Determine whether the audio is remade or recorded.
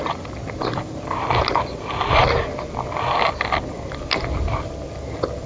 recorded